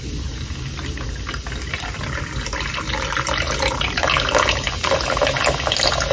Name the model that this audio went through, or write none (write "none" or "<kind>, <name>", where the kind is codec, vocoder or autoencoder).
none